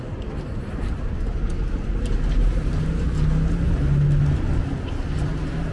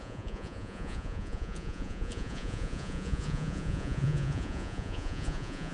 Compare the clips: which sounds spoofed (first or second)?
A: second